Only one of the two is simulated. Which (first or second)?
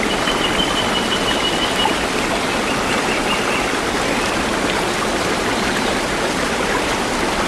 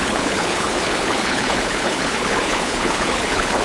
second